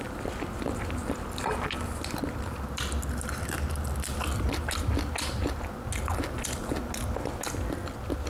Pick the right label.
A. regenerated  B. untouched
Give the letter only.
B